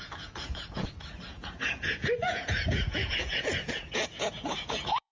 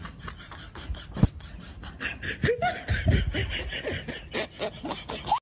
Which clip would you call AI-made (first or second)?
first